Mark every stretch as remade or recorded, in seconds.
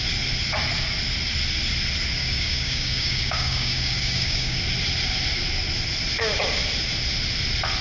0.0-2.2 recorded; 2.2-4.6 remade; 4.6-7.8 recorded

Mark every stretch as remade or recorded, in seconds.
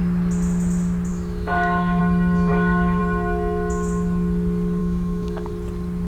0.0-1.1 recorded; 1.1-2.0 remade; 2.0-2.5 recorded; 2.5-3.0 remade; 3.0-4.8 recorded; 4.8-5.5 remade; 5.5-6.1 recorded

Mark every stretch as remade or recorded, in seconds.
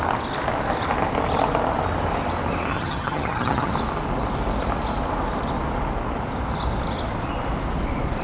0.0-2.7 recorded; 2.7-3.7 remade; 3.7-8.2 recorded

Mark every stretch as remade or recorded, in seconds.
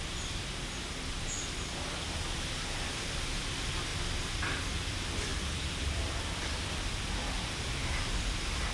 0.0-3.9 recorded; 3.9-4.6 remade; 4.6-5.3 recorded; 5.3-6.5 remade; 6.5-8.7 recorded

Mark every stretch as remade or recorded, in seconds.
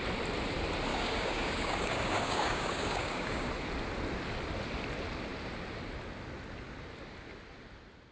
0.0-0.9 recorded; 0.9-3.5 remade; 3.5-8.1 recorded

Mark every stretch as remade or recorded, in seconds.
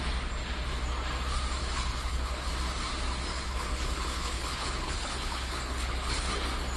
0.0-1.6 recorded; 1.6-2.5 remade; 2.5-3.3 recorded; 3.3-6.3 remade; 6.3-6.8 recorded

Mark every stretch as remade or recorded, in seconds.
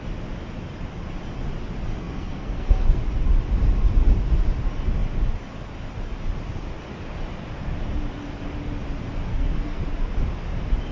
0.0-1.9 recorded; 1.9-3.0 remade; 3.0-9.3 recorded; 9.3-9.8 remade; 9.8-10.9 recorded